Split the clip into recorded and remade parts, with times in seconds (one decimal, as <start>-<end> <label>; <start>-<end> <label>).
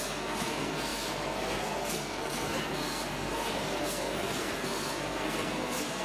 0.0-6.0 remade